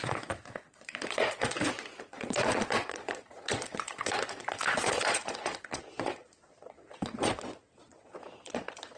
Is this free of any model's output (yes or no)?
no